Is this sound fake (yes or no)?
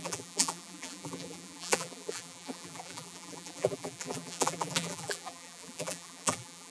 yes